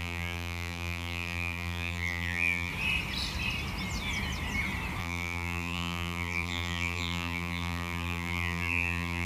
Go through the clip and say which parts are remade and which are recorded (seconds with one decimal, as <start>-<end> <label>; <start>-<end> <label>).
0.0-2.7 remade; 2.7-5.0 recorded; 5.0-9.3 remade